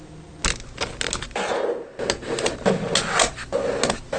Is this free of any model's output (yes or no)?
yes